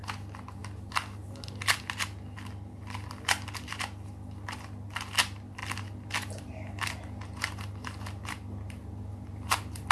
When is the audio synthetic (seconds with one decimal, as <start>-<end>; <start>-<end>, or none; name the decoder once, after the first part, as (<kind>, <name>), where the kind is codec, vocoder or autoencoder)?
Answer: none